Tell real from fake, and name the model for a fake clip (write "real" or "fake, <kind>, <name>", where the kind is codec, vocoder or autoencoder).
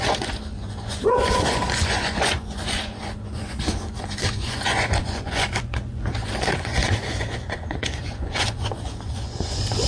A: fake, vocoder, Vocos